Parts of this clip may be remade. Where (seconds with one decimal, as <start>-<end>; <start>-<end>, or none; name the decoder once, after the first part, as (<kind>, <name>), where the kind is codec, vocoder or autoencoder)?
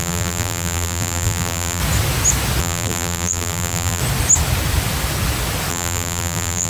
0.0-1.8 (vocoder, BigVGAN v2); 2.6-4.0; 5.7-6.7